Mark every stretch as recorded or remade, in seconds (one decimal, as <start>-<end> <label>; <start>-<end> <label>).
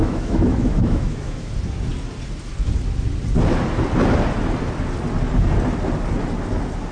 0.0-1.5 remade; 1.5-6.9 recorded